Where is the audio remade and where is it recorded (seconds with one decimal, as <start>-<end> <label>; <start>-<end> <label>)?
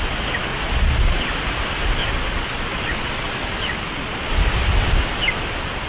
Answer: 0.0-0.5 recorded; 0.5-1.3 remade; 1.3-2.0 recorded; 2.0-4.2 remade; 4.2-5.9 recorded